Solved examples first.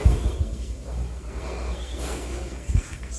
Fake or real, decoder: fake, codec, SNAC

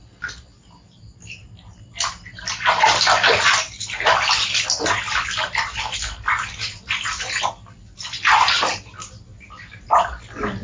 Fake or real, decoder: real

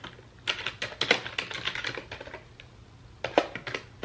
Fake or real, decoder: real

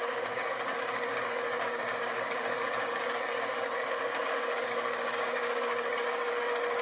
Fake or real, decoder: fake, codec, DAC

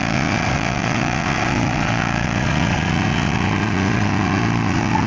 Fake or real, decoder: fake, vocoder, Vocos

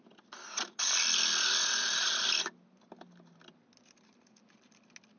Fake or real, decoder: real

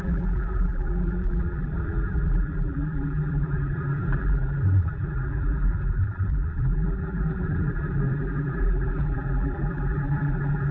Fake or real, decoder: fake, vocoder, BigVGAN v2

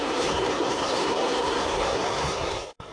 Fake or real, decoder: fake, codec, SNAC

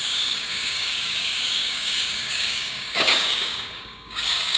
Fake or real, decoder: fake, codec, DAC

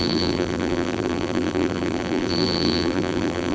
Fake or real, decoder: fake, vocoder, BigVGAN v2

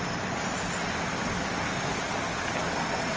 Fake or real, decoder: real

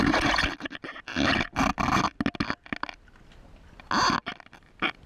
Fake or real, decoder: real